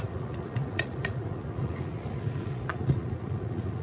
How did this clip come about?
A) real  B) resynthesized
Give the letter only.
B